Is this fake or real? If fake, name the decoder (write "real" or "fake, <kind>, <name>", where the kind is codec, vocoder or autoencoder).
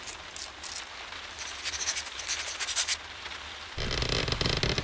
real